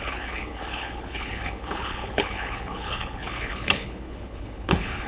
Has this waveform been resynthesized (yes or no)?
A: yes